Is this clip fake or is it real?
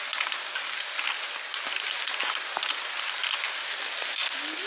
real